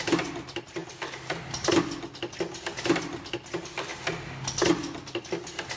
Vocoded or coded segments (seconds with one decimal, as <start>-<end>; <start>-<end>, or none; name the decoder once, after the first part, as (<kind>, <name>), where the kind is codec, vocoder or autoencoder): none